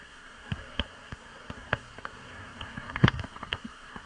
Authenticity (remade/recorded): remade